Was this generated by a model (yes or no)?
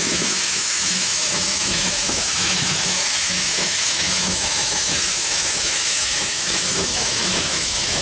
yes